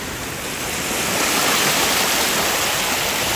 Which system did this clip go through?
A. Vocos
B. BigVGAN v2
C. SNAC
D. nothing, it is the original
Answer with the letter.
D